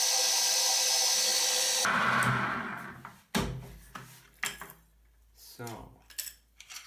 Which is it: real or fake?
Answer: real